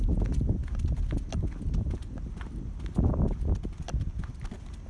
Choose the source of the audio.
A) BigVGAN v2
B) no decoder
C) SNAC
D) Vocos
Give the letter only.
B